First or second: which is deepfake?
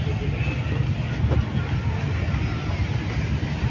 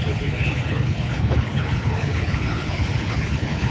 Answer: second